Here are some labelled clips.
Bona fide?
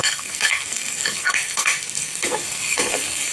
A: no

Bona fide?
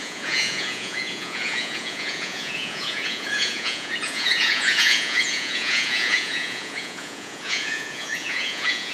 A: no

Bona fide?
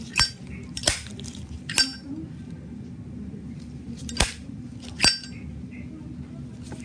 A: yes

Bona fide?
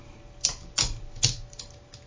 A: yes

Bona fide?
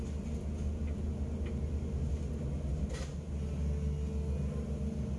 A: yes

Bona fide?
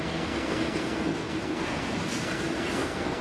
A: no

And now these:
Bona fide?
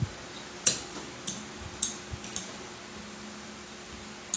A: yes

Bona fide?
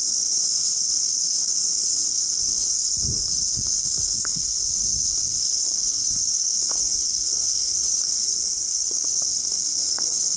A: no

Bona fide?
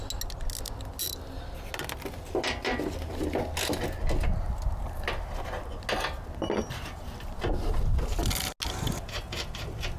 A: yes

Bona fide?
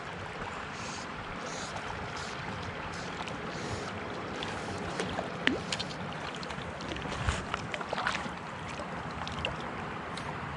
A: no